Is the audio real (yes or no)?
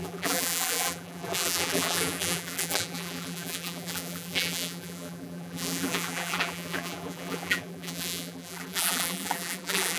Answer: no